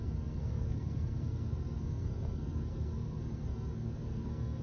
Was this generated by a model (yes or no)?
yes